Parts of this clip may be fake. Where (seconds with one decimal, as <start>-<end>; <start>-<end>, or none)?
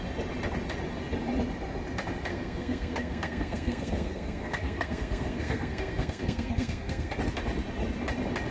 2.3-7.2